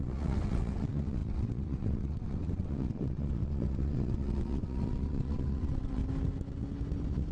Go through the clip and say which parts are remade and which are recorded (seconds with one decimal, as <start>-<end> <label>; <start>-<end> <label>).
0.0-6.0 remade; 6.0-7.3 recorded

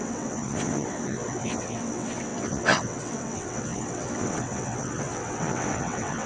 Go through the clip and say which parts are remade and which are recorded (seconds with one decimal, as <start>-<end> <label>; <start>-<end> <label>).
0.0-6.3 remade

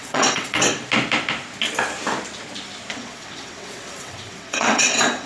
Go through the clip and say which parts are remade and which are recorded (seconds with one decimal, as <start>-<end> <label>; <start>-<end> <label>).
0.0-0.8 remade; 0.8-2.9 recorded; 2.9-5.3 remade

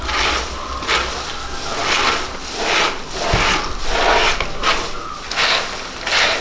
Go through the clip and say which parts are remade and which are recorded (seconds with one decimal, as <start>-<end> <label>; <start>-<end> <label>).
0.0-6.4 recorded

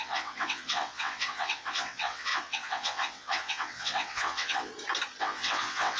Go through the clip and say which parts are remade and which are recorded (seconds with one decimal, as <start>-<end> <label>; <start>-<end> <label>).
0.0-4.7 remade; 4.7-5.2 recorded; 5.2-6.0 remade